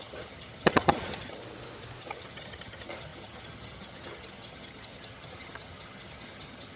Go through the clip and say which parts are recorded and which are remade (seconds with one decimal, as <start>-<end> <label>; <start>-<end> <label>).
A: 0.0-1.4 remade; 1.4-2.0 recorded; 2.0-6.8 remade